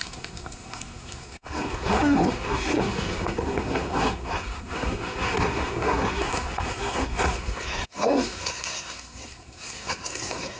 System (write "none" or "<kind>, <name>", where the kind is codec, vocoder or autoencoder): codec, SNAC